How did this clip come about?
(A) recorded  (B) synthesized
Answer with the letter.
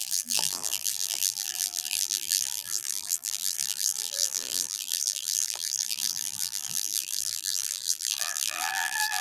B